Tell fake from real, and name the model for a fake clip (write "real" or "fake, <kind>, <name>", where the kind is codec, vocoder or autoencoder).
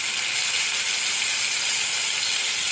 real